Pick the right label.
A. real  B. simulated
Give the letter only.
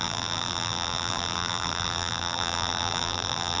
B